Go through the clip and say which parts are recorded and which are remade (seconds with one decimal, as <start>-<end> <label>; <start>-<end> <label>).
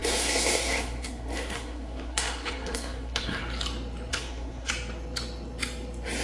0.0-3.4 remade; 3.4-4.1 recorded; 4.1-4.7 remade; 4.7-6.2 recorded